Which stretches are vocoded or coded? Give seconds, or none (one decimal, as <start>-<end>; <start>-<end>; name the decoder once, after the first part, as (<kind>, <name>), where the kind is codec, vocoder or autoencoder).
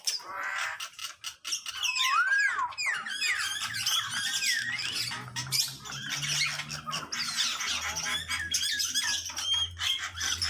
0.0-1.0 (vocoder, BigVGAN v2); 1.7-4.3; 5.1-5.7; 8.8-10.5